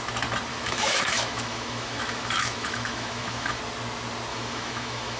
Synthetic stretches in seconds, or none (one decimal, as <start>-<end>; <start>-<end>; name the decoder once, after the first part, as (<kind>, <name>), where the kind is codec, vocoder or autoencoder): 0.5-3.6 (autoencoder, DAC-VAE); 4.3-5.2